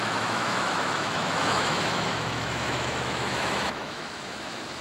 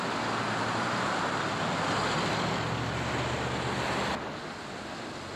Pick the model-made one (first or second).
first